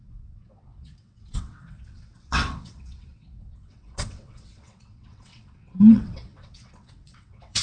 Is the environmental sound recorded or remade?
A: remade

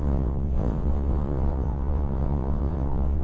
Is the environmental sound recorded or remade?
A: remade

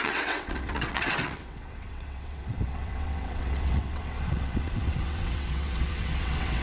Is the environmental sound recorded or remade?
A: remade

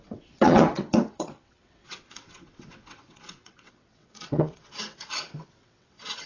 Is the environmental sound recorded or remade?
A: remade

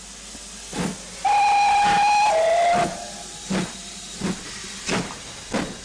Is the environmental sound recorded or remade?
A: recorded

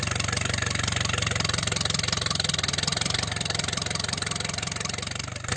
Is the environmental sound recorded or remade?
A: recorded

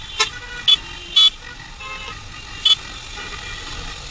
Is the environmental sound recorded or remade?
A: recorded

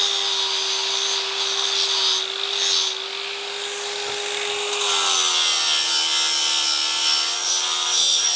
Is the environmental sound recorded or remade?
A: recorded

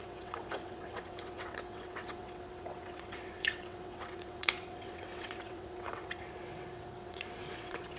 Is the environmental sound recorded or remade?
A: remade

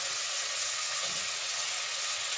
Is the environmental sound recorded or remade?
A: remade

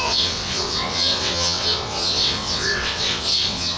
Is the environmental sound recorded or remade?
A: remade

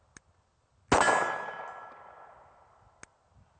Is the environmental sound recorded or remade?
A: recorded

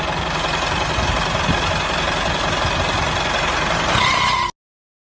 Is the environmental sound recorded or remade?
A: recorded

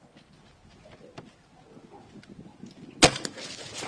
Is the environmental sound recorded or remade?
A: recorded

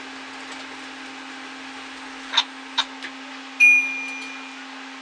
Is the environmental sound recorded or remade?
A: recorded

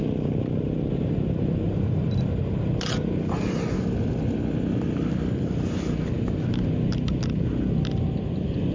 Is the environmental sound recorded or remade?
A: recorded